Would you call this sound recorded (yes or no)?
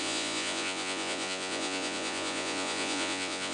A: no